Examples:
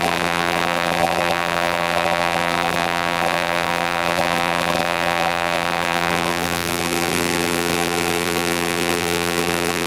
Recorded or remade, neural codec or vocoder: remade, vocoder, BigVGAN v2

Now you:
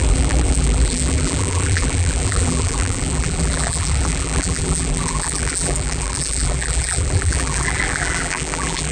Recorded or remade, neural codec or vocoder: remade, vocoder, BigVGAN v2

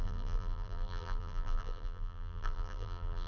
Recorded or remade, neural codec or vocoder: remade, vocoder, BigVGAN v2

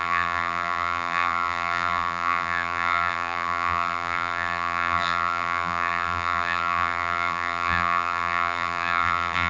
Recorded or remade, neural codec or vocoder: remade, vocoder, BigVGAN v2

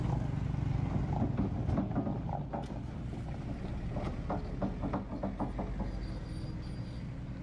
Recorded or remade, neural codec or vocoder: recorded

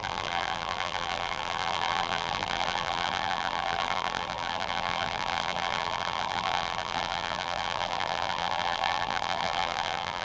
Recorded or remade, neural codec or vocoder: remade, vocoder, BigVGAN v2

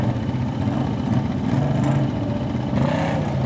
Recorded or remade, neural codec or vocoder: recorded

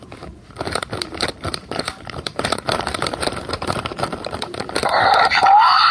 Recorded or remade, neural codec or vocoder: remade, vocoder, BigVGAN v2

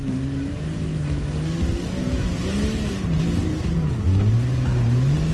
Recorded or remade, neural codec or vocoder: recorded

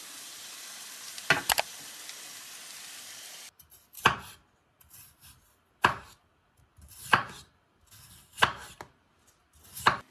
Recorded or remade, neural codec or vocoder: remade, vocoder, BigVGAN v2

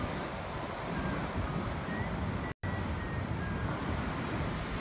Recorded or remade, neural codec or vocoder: recorded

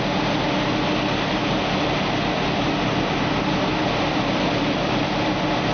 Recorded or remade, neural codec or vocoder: recorded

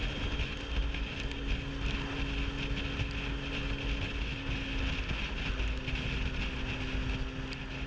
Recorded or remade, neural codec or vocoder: recorded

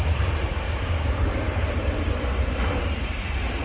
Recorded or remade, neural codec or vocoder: remade, vocoder, BigVGAN v2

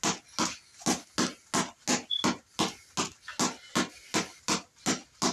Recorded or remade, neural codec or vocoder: recorded